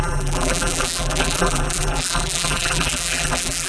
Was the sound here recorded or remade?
remade